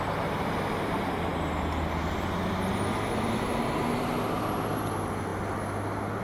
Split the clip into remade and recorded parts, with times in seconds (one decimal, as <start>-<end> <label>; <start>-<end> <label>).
0.0-6.2 recorded